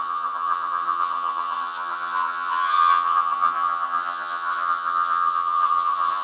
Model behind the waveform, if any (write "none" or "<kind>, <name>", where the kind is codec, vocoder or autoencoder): vocoder, HiFi-GAN